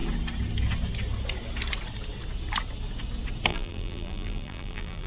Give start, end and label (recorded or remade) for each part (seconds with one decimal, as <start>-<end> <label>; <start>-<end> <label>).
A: 0.0-3.5 recorded; 3.5-5.1 remade